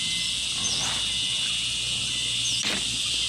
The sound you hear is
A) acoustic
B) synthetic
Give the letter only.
A